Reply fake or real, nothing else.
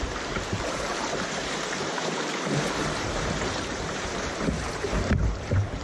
fake